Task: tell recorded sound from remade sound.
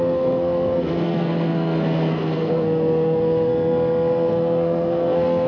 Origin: remade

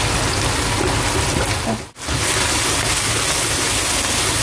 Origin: recorded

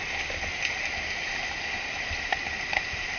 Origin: recorded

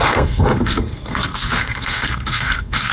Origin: remade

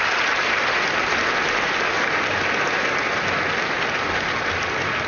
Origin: recorded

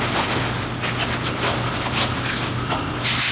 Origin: recorded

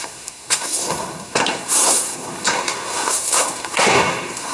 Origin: remade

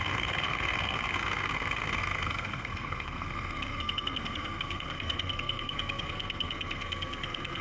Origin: remade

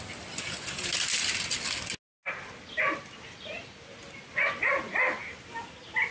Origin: recorded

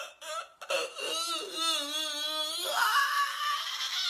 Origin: recorded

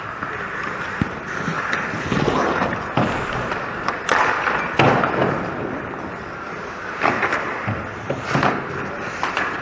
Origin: recorded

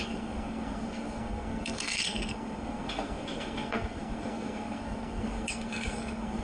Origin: remade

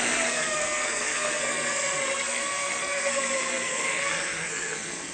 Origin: remade